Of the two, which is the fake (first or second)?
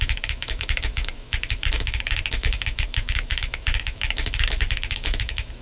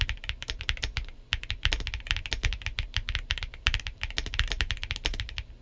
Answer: first